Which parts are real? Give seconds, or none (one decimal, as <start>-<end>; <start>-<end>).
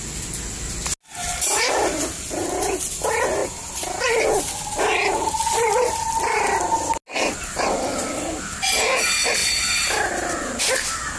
0.0-11.2